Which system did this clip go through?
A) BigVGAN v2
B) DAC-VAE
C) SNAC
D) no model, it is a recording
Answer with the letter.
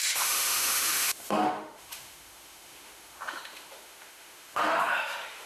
B